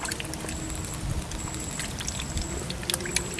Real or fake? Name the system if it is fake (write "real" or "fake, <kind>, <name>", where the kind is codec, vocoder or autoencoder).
real